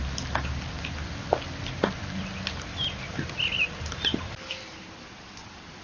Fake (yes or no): no